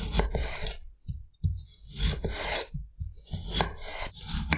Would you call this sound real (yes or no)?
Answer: no